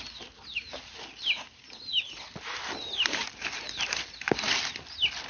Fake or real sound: real